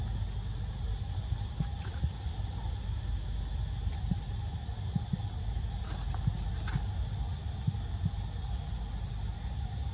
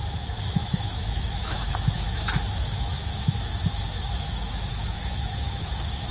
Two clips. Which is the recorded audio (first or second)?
first